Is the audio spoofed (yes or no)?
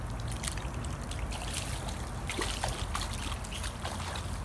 no